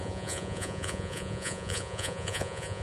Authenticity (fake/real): fake